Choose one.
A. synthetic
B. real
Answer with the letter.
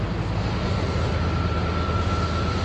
B